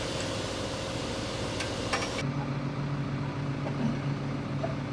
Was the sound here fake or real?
real